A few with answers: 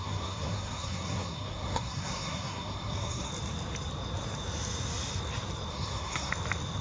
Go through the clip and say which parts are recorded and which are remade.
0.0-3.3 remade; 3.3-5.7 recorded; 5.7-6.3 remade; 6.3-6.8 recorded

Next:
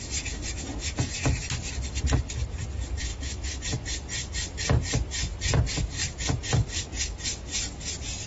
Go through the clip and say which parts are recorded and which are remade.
0.0-3.1 recorded; 3.1-3.6 remade; 3.6-8.3 recorded